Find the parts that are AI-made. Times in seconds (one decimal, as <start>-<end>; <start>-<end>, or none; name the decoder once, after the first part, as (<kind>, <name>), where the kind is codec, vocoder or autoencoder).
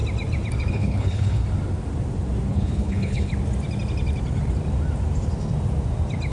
0.7-1.4 (codec, HILCodec); 2.5-3.3